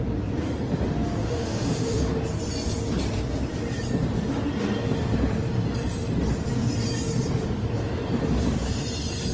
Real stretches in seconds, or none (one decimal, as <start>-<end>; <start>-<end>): 0.0-1.2; 2.0-9.3